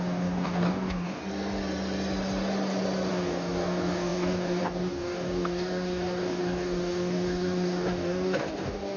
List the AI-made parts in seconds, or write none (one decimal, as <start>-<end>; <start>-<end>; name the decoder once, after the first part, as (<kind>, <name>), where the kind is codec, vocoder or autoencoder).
0.0-1.2 (codec, DAC); 3.1-9.0